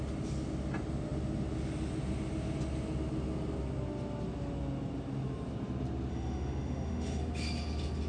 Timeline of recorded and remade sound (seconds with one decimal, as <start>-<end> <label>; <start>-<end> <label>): 0.0-6.1 recorded; 6.1-7.2 remade; 7.2-8.1 recorded